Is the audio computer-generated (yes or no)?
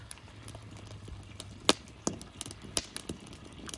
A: no